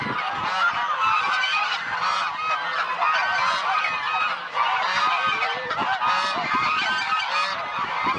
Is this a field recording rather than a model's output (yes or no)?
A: yes